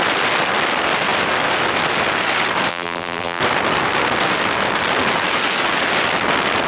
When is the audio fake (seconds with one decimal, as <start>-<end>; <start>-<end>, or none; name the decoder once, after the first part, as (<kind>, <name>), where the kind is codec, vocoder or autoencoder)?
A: 2.7-3.4 (vocoder, BigVGAN v2)